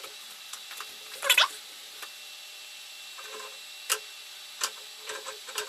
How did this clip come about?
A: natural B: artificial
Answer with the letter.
B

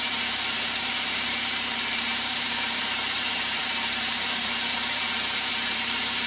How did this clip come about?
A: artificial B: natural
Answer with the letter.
A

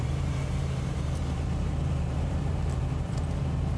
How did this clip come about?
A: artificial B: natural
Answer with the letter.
A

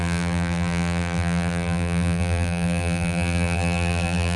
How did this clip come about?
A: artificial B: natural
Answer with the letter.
A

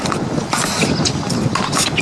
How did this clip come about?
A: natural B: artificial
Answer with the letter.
A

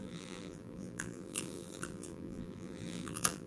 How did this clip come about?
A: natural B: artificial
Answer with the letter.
B